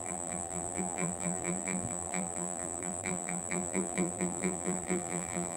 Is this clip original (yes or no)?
no